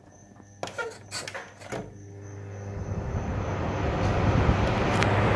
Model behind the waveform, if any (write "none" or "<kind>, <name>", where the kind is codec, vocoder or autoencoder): none